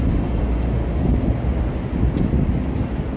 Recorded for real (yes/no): yes